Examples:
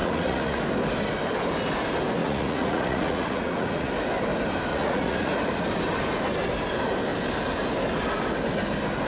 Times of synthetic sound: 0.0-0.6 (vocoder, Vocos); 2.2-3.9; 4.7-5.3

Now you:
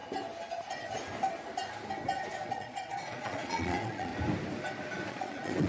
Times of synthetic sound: 2.5-4.1 (vocoder, Vocos); 5.1-5.7

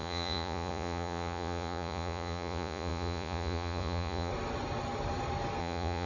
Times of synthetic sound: 0.0-4.3 (vocoder, Vocos); 5.6-6.1

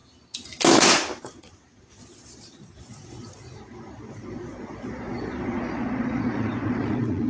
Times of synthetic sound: 1.2-7.3 (vocoder, Vocos)

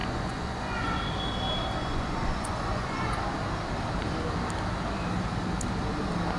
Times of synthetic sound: 0.0-1.0 (vocoder, Vocos); 1.8-3.2

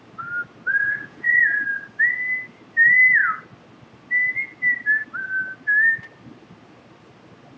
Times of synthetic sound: 0.8-1.4 (vocoder, Vocos)